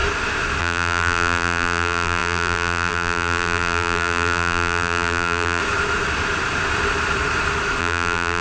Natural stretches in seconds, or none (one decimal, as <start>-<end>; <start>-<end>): 0.0-0.6; 5.6-7.8